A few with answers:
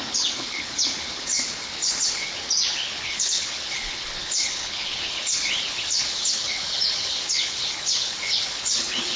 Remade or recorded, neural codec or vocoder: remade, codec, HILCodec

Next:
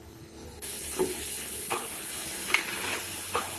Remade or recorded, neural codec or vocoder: remade, codec, HILCodec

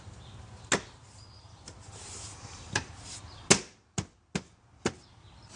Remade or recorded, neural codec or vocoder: recorded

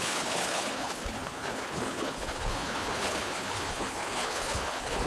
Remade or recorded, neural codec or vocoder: remade, codec, HILCodec